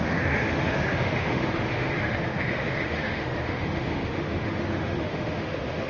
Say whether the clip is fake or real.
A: fake